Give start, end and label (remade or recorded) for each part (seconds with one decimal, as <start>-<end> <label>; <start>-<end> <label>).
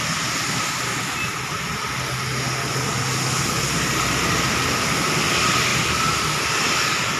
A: 0.0-7.2 recorded